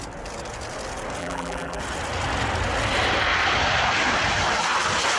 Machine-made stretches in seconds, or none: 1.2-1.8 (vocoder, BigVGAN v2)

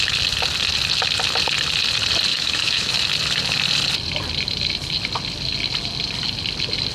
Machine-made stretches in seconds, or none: 2.3-2.9 (autoencoder, DAC-VAE)